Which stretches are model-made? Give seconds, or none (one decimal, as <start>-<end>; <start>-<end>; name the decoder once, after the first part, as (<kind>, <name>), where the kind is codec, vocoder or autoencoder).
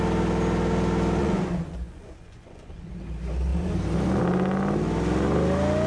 1.2-2.9 (vocoder, Vocos)